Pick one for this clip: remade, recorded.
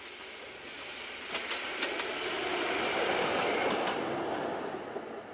recorded